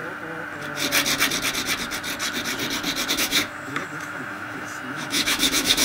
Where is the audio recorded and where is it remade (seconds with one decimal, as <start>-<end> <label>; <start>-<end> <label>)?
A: 0.0-3.1 recorded; 3.1-5.8 remade